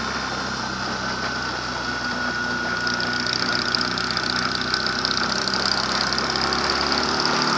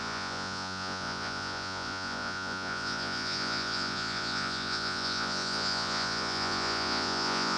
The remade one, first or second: second